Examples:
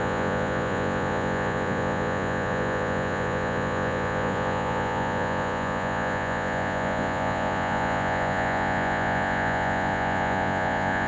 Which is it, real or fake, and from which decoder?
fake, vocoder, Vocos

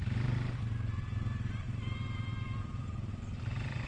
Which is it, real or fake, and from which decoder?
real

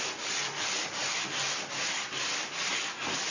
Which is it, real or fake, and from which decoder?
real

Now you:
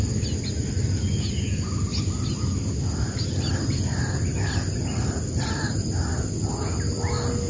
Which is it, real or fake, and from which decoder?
real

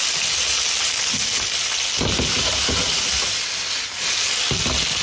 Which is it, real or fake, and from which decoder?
real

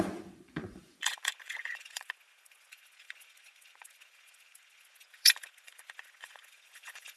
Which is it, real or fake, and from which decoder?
fake, vocoder, Vocos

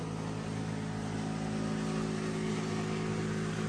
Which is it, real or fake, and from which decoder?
real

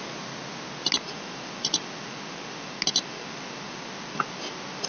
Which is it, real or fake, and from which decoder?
real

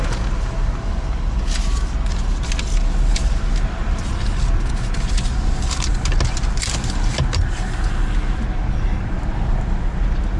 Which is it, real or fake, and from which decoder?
real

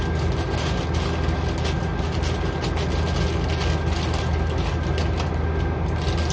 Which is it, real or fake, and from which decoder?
real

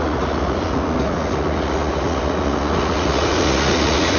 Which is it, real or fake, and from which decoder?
fake, vocoder, Vocos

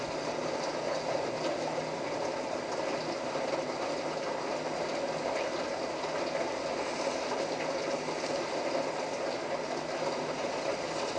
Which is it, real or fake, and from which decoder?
real